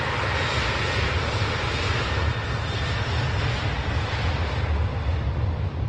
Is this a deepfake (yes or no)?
no